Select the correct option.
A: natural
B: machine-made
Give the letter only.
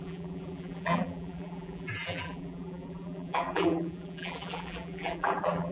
B